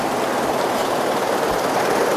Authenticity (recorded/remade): recorded